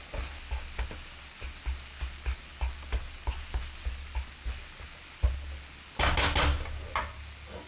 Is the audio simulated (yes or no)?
no